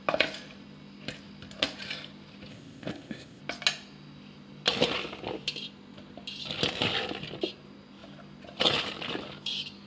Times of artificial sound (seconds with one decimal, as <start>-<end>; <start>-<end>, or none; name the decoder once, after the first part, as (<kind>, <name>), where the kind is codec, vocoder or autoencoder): 2.5-3.4 (codec, ZipCodec)